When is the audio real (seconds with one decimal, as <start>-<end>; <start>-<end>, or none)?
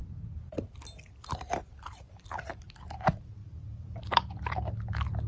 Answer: 0.0-3.4; 4.0-5.3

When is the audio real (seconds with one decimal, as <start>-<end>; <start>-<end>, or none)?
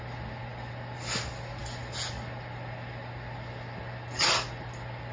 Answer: 0.0-5.1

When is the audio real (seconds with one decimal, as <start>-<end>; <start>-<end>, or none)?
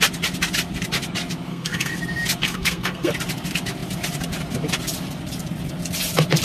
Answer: 0.0-1.5; 2.0-2.4; 3.1-6.4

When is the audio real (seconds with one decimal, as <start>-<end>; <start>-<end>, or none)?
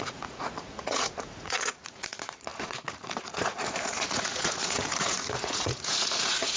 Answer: none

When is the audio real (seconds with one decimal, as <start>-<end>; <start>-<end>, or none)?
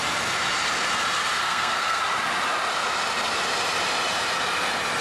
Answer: 0.0-1.4; 2.0-5.0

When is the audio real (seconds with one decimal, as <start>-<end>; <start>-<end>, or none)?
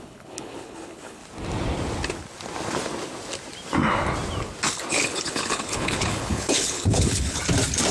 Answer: 1.2-4.9; 7.4-7.9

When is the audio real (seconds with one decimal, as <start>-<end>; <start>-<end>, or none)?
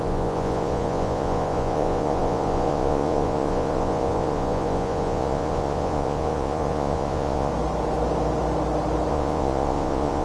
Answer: 7.5-9.1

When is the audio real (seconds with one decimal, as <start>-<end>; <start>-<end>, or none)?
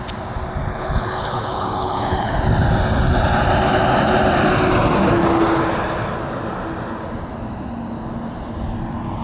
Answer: 0.0-0.7; 2.3-9.2